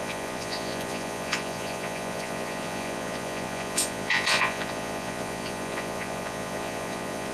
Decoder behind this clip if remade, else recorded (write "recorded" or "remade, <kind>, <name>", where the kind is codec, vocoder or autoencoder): remade, vocoder, Vocos